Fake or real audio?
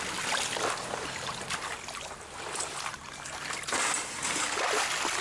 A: real